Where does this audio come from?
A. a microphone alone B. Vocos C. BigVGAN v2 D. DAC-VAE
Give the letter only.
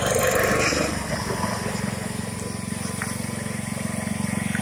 A